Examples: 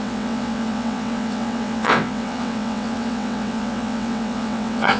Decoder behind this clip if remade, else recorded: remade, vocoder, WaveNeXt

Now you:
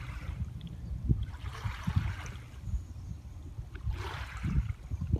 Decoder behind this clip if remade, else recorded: remade, vocoder, BigVGAN v2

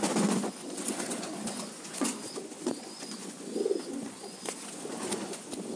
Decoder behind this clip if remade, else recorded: remade, vocoder, Vocos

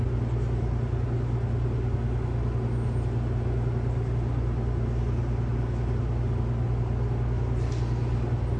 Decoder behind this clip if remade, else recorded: recorded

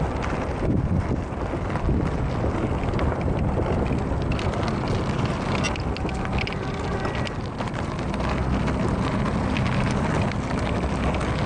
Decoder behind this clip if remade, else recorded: recorded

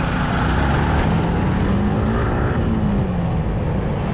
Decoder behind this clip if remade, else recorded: recorded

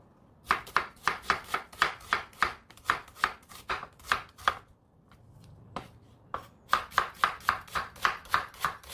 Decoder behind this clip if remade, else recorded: recorded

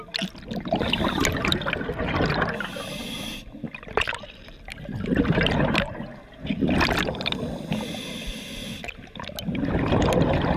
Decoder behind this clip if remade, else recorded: recorded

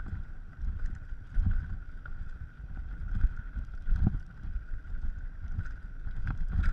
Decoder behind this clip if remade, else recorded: recorded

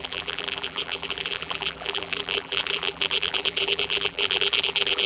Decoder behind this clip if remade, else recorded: remade, vocoder, BigVGAN v2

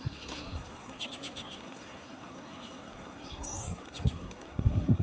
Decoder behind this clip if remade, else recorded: remade, codec, SNAC